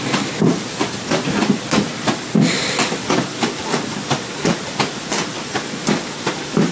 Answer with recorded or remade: recorded